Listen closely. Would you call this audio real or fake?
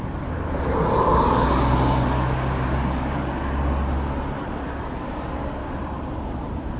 real